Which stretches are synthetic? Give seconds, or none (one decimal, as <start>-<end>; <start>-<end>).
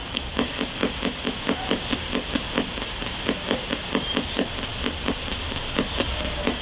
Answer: none